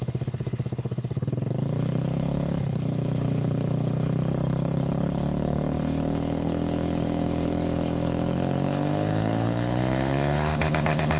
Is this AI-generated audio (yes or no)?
yes